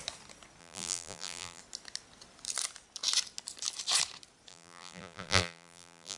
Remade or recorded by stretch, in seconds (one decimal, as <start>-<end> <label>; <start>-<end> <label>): 0.0-0.6 recorded; 0.6-1.6 remade; 1.6-4.5 recorded; 4.5-6.2 remade